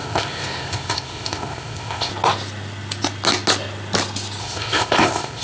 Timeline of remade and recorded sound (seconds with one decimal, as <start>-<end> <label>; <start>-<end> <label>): 0.0-2.1 remade; 2.1-4.4 recorded; 4.4-5.4 remade